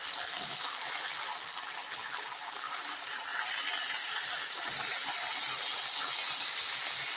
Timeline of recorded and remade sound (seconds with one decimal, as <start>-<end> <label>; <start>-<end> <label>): 0.0-7.2 recorded